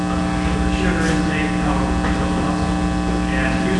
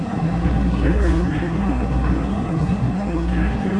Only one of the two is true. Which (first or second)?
first